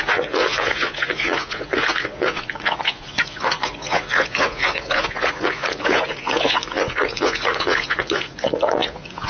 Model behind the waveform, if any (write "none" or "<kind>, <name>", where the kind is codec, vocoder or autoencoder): vocoder, Vocos